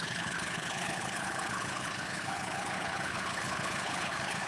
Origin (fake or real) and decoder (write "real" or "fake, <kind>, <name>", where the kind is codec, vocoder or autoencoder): fake, codec, HILCodec